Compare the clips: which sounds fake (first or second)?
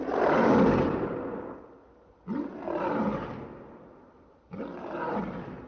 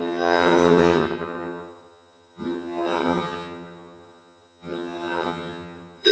second